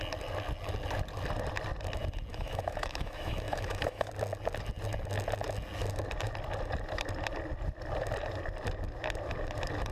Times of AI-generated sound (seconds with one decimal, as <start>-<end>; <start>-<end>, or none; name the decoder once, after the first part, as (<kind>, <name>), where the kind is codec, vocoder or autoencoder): 2.3-4.1 (autoencoder, DAC-VAE)